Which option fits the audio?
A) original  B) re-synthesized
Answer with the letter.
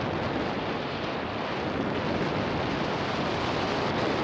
A